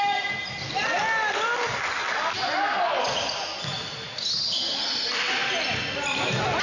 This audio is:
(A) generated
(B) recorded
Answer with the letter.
B